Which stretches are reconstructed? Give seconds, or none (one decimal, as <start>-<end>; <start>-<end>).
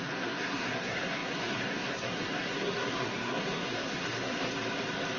0.0-4.5